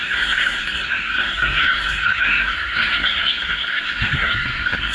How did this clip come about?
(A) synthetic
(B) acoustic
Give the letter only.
A